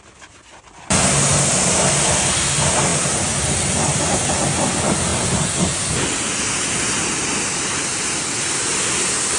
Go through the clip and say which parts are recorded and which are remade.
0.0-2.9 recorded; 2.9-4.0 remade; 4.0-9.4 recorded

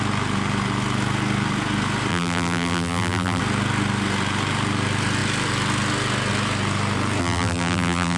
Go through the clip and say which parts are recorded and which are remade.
0.0-2.1 recorded; 2.1-3.4 remade; 3.4-7.2 recorded; 7.2-8.2 remade